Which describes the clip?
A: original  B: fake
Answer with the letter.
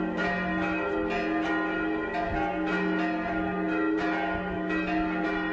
A